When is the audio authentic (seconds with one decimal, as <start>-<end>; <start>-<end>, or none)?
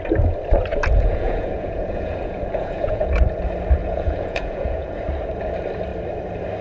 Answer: 0.0-0.7; 3.2-3.8; 5.0-6.6